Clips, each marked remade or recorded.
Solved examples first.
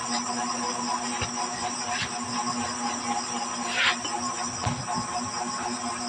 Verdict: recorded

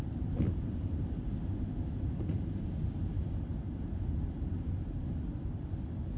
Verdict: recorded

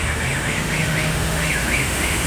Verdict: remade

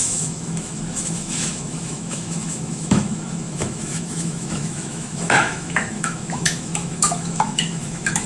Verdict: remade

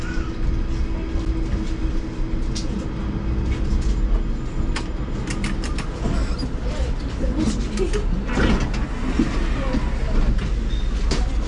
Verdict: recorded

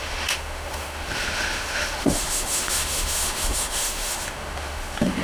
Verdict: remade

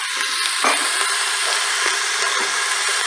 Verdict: recorded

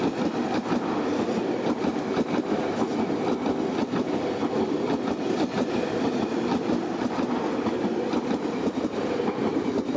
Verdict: recorded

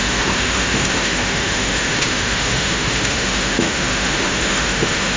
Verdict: remade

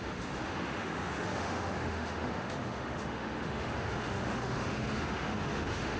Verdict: remade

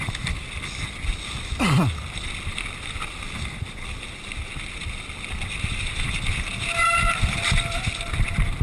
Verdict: recorded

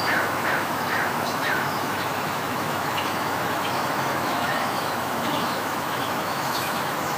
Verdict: remade